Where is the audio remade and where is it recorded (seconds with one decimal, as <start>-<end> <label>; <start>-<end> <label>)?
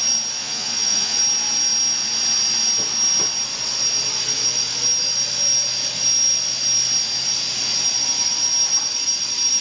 0.0-0.4 recorded; 0.4-1.2 remade; 1.2-9.6 recorded